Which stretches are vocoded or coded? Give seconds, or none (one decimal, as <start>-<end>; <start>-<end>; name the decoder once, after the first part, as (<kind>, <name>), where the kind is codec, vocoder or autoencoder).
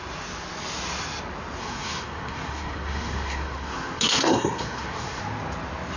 1.6-5.2 (codec, SNAC)